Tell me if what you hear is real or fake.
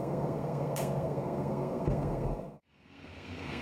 fake